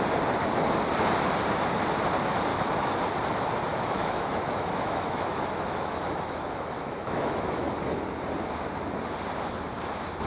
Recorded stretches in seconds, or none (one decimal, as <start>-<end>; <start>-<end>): 0.0-2.5; 3.0-3.7; 7.6-10.3